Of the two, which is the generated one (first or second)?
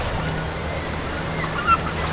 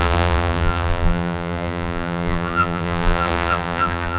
second